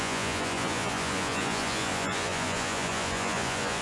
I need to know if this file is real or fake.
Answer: fake